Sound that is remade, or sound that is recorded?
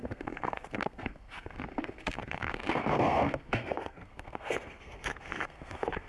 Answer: remade